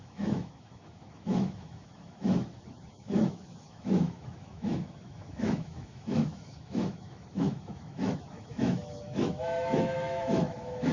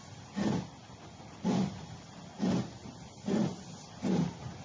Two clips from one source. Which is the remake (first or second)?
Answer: first